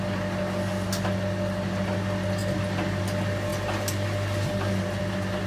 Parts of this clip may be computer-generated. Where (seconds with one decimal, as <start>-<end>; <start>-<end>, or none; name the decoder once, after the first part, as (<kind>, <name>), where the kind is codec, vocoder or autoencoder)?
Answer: none